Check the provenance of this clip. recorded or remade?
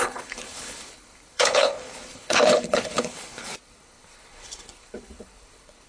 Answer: remade